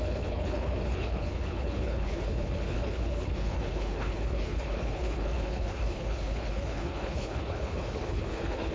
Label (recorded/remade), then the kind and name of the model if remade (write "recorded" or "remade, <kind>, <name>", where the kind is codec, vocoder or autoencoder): remade, codec, HILCodec